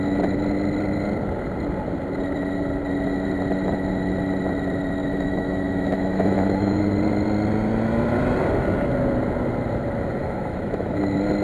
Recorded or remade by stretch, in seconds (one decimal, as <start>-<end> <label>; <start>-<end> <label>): 0.0-5.0 recorded; 5.0-6.8 remade; 6.8-10.2 recorded; 10.2-11.0 remade; 11.0-11.4 recorded